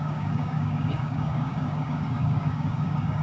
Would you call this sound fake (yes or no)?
yes